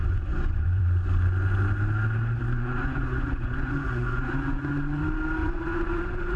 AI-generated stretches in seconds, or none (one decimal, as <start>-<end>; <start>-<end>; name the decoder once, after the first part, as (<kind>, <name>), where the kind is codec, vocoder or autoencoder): 0.0-0.8 (vocoder, Vocos); 2.4-5.0; 5.4-6.4